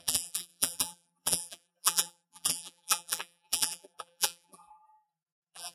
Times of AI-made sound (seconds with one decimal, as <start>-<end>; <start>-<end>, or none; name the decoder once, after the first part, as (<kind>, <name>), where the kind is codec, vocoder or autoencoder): 0.0-5.7 (vocoder, BigVGAN v2)

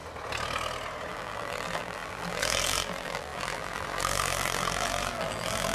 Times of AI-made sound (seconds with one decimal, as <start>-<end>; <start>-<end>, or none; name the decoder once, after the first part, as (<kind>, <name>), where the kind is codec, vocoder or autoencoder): 1.1-5.7 (vocoder, BigVGAN v2)